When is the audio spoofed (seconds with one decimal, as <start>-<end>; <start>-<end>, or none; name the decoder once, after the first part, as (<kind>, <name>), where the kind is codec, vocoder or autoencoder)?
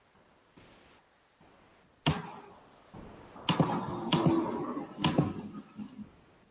none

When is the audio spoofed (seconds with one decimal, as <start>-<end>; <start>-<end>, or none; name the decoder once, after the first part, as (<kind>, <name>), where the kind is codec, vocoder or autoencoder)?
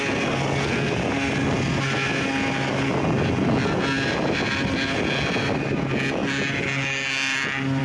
none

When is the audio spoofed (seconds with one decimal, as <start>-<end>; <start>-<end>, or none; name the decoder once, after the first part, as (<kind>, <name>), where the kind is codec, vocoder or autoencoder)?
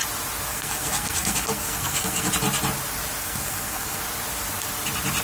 0.5-2.3 (codec, SNAC); 3.2-4.0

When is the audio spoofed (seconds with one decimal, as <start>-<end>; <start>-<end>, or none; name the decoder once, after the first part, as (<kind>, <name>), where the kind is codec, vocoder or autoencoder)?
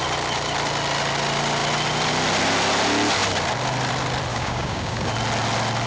4.3-5.1 (codec, DAC)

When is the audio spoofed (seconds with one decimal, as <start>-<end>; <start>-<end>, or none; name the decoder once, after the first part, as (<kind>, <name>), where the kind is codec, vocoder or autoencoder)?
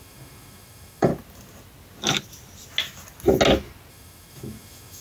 0.0-1.1 (autoencoder, DAC-VAE); 3.9-5.0